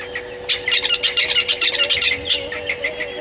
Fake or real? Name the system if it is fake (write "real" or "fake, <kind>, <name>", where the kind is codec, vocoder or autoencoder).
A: real